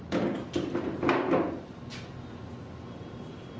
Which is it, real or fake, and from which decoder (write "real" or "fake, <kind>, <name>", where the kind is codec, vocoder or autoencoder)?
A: real